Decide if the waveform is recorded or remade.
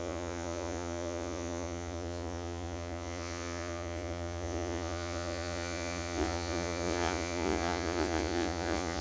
remade